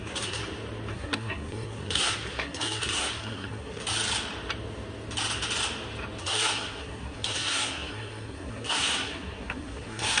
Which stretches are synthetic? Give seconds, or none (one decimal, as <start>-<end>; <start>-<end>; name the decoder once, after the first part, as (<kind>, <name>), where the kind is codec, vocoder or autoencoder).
0.0-0.4 (codec, SNAC); 0.9-3.8; 6.2-10.2